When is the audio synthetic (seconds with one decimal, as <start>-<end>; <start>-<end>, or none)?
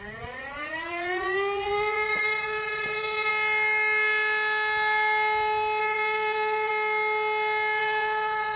0.0-3.3; 5.8-6.7; 7.8-8.6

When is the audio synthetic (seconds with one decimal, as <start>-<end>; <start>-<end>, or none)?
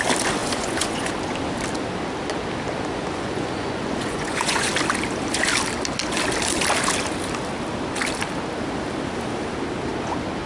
0.4-1.1; 2.9-4.7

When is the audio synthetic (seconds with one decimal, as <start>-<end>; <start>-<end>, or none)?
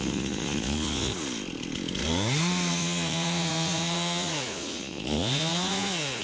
0.0-1.1; 2.7-6.2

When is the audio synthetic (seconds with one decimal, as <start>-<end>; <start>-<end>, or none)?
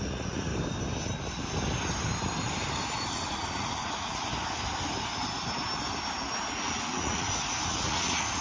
0.0-0.5; 3.1-4.3; 6.5-8.4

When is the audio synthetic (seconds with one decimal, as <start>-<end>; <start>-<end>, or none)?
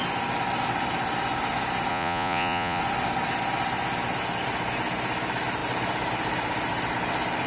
1.9-2.8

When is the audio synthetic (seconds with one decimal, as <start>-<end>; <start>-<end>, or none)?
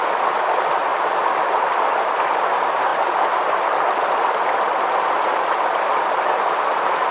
none